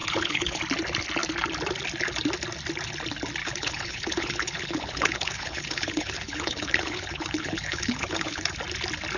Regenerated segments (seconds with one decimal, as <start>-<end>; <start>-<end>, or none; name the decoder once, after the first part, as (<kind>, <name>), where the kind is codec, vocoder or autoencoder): 0.0-0.6 (codec, HILCodec); 3.4-8.5